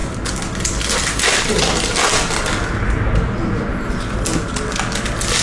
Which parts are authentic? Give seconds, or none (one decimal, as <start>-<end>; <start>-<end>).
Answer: 0.0-5.4